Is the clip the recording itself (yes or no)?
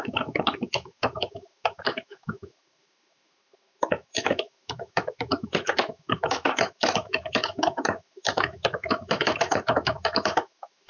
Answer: no